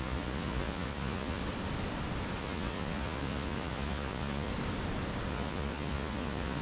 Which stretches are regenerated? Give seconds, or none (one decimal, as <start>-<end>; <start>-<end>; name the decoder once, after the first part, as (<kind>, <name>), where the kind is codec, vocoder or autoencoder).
0.0-1.4 (vocoder, Vocos); 2.4-4.5; 5.3-6.6